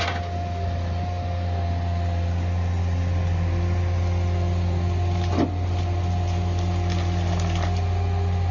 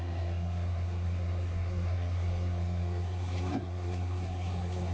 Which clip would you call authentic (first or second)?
first